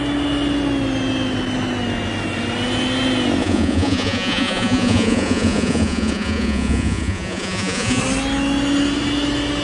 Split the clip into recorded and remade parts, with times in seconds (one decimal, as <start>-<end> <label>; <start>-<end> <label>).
0.0-3.4 recorded; 3.4-8.0 remade; 8.0-9.6 recorded